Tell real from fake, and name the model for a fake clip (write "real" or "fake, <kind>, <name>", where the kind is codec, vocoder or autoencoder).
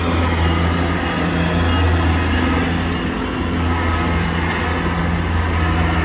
real